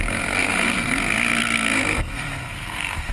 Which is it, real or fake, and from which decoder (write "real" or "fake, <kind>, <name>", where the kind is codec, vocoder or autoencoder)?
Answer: fake, codec, SNAC